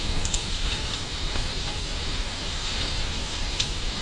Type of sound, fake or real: fake